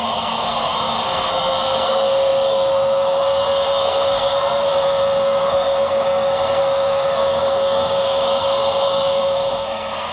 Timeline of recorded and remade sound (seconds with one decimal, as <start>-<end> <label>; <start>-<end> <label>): 0.0-10.1 remade